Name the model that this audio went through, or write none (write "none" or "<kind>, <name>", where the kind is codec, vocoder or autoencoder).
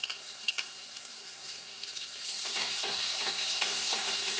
codec, SNAC